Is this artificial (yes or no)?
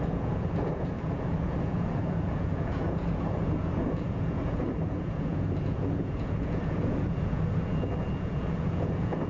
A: yes